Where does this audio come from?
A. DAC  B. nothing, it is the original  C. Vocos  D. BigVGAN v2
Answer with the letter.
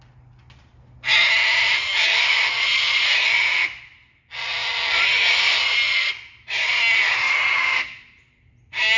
B